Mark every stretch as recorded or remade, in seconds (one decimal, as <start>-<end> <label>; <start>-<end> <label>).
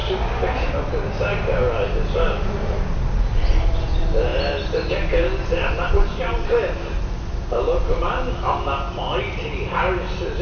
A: 0.0-10.4 recorded